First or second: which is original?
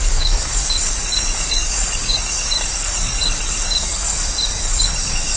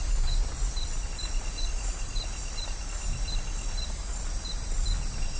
second